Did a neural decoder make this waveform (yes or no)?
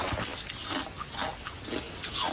no